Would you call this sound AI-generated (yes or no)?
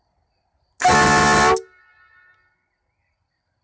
no